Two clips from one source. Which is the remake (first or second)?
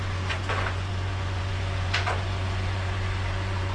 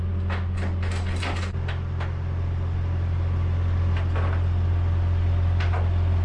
first